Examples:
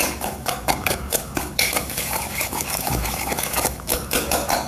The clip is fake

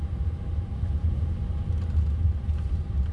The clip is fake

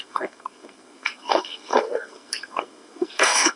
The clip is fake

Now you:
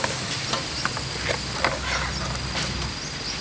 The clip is real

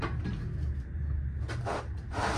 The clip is real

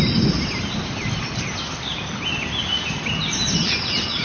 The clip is real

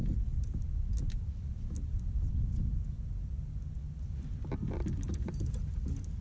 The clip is real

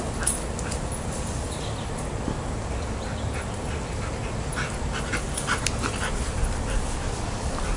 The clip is real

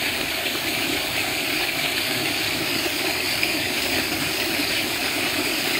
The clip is fake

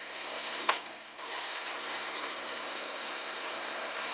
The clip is fake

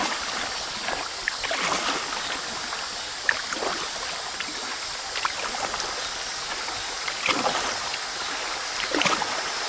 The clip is real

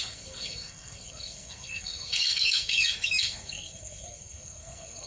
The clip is fake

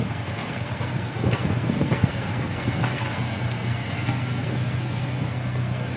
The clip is fake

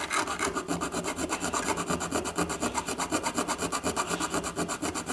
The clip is real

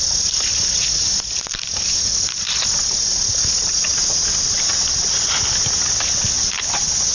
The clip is real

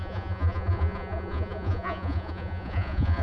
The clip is fake